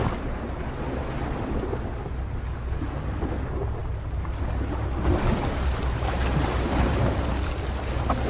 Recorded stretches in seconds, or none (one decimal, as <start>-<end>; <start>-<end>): 0.0-8.3